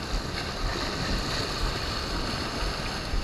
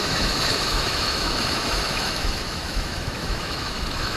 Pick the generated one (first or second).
second